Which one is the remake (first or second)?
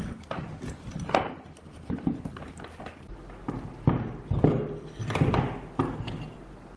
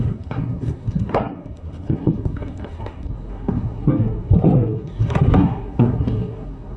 second